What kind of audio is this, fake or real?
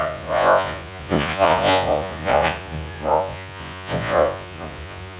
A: fake